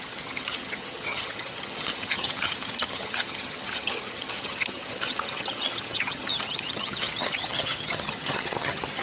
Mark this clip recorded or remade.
remade